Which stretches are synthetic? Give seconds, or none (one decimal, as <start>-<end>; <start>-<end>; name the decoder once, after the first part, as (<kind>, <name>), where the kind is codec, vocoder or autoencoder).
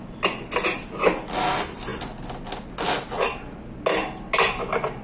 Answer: none